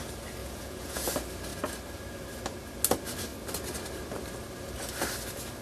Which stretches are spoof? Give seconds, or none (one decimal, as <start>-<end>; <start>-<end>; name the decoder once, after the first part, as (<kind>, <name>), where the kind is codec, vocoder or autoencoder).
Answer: 0.4-1.1 (vocoder, Vocos)